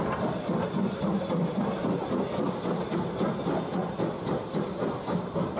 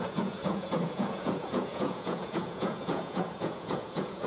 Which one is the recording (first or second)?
first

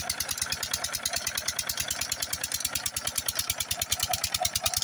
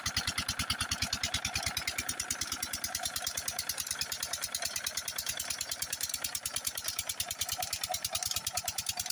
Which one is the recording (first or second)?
first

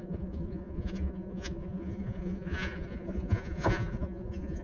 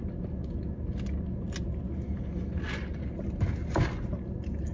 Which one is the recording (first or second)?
second